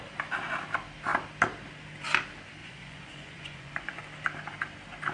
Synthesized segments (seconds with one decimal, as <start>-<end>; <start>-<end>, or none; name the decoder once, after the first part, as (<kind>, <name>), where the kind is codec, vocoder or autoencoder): 2.6-4.0 (vocoder, Vocos)